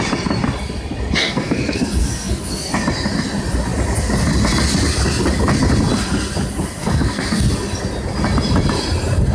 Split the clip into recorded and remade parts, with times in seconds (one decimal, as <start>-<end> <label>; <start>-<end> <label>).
0.0-1.2 recorded; 1.2-2.7 remade; 2.7-6.8 recorded; 6.8-7.5 remade; 7.5-9.3 recorded